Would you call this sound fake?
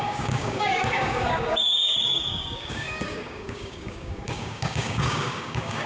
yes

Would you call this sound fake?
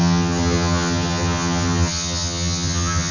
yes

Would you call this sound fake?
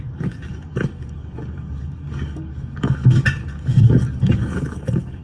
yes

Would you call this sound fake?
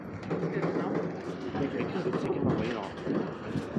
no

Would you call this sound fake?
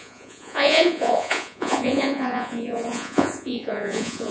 yes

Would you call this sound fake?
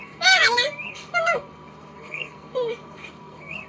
yes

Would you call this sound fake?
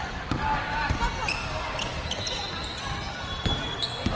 no